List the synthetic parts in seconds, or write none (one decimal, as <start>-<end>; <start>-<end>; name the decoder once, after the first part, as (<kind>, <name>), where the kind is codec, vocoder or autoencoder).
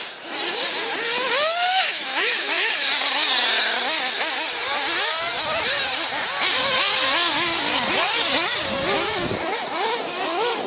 1.7-2.9 (autoencoder, DAC-VAE)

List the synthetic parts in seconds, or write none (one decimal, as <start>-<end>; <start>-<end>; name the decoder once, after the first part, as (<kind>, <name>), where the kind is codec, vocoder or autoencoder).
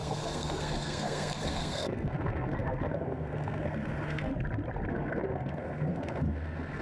0.0-4.3 (codec, SNAC); 4.9-6.8